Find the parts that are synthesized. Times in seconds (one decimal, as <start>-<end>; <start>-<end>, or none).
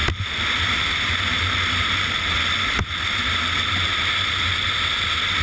none